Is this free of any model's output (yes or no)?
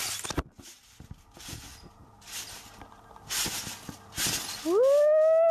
yes